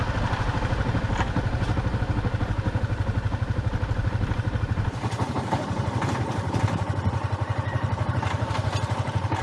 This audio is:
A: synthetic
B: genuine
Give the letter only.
A